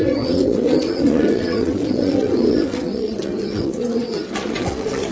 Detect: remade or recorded remade